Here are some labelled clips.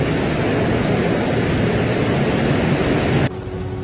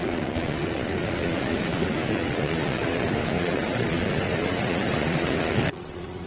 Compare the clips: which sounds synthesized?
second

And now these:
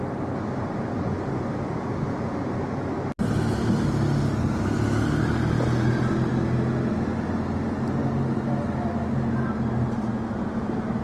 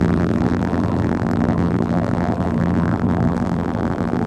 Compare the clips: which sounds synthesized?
second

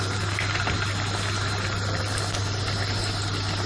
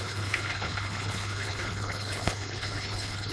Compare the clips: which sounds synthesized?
second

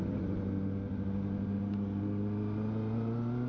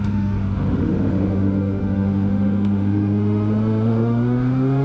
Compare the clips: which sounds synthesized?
second